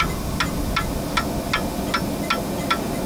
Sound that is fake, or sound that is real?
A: real